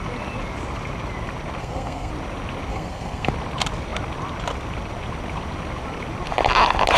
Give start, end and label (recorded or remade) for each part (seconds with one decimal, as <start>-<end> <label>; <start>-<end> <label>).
0.0-1.6 recorded; 1.6-2.1 remade; 2.1-2.7 recorded; 2.7-3.3 remade; 3.3-7.0 recorded

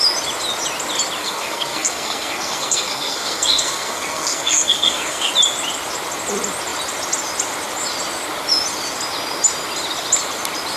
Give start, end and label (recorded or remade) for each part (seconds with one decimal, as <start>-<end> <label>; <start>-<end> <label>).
0.0-1.2 recorded; 1.2-5.3 remade; 5.3-10.8 recorded

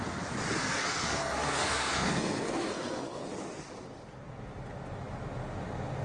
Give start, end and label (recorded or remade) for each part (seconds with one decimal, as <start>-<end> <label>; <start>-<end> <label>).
0.0-0.6 recorded; 0.6-3.2 remade; 3.2-6.0 recorded

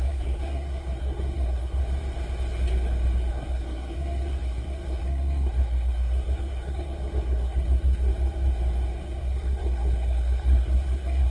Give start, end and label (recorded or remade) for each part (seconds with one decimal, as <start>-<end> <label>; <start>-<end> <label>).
0.0-1.8 remade; 1.8-3.3 recorded; 3.3-8.1 remade; 8.1-9.0 recorded; 9.0-11.3 remade

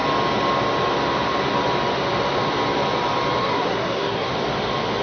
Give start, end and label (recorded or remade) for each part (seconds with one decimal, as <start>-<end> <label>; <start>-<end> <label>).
0.0-3.4 recorded; 3.4-4.3 remade; 4.3-5.0 recorded

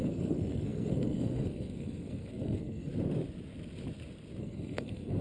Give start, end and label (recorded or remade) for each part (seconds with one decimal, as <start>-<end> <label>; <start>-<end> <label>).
0.0-2.9 remade; 2.9-4.4 recorded; 4.4-5.2 remade